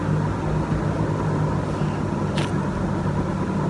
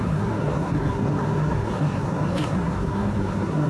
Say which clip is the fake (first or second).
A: second